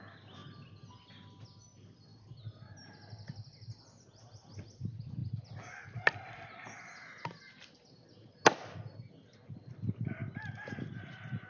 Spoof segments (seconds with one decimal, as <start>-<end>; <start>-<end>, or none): none